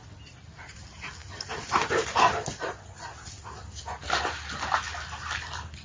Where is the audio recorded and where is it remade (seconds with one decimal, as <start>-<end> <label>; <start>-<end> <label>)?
0.0-5.8 recorded